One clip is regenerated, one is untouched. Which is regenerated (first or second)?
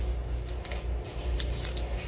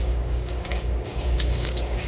second